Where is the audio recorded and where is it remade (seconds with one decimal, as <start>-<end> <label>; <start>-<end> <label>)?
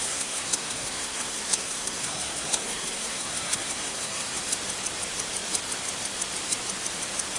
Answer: 0.0-4.4 remade; 4.4-7.4 recorded